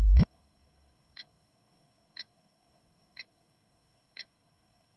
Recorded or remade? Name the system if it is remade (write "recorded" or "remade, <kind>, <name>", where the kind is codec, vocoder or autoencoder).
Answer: remade, codec, DAC